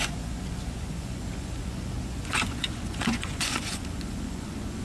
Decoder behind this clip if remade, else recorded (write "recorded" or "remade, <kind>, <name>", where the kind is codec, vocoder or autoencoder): remade, vocoder, Vocos